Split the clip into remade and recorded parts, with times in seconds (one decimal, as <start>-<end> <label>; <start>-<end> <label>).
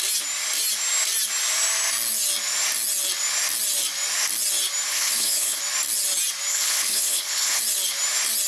0.0-4.9 recorded; 4.9-5.6 remade; 5.6-6.5 recorded; 6.5-7.6 remade; 7.6-8.5 recorded